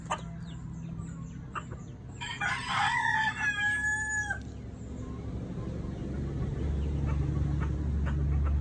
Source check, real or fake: real